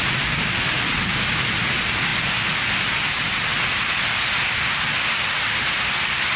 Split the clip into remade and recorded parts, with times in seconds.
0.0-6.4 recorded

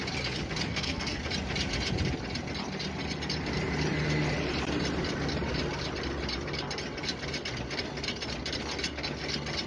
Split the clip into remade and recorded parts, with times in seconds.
0.0-0.7 recorded; 0.7-1.2 remade; 1.2-9.7 recorded

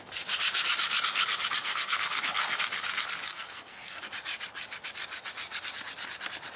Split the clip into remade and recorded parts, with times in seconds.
0.0-1.6 recorded; 1.6-2.5 remade; 2.5-3.3 recorded; 3.3-4.0 remade; 4.0-6.6 recorded

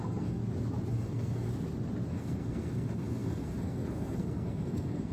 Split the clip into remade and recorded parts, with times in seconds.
0.0-0.4 remade; 0.4-0.9 recorded; 0.9-1.5 remade; 1.5-2.1 recorded; 2.1-5.1 remade

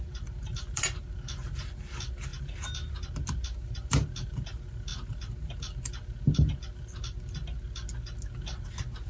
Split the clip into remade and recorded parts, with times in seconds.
0.0-9.1 recorded

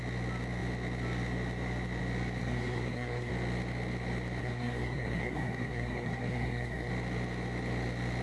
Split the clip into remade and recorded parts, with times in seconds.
0.0-2.4 recorded; 2.4-3.3 remade; 3.3-4.4 recorded; 4.4-6.9 remade; 6.9-8.2 recorded